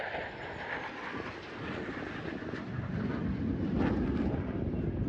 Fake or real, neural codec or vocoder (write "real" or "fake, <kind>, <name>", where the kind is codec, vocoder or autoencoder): real